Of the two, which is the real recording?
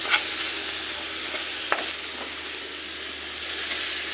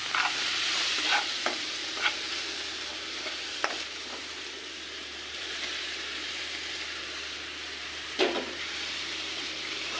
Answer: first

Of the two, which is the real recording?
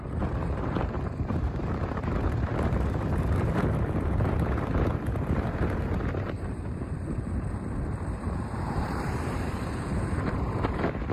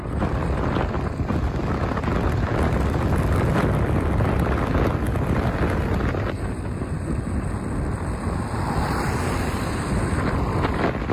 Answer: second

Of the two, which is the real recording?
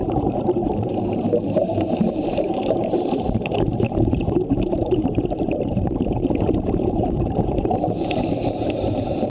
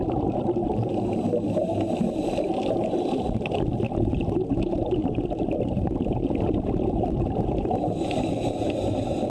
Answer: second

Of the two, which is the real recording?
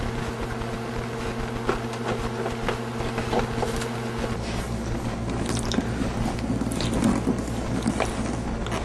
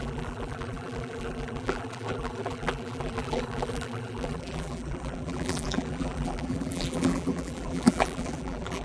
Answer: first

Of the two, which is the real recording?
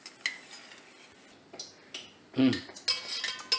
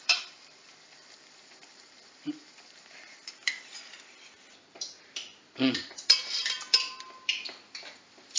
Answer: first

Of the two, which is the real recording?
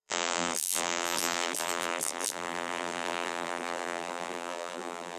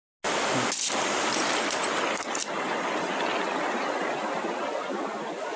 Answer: second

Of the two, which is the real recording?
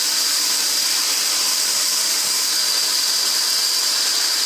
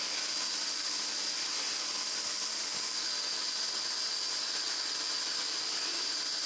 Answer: second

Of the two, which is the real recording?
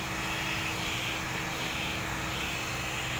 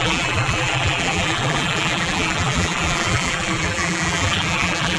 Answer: first